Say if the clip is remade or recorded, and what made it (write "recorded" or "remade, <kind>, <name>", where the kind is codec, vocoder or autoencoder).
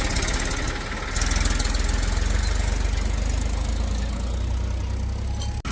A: recorded